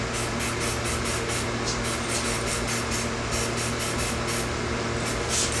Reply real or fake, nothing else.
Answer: real